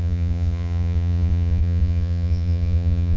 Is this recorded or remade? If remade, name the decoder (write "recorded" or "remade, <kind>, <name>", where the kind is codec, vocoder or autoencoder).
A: remade, vocoder, Vocos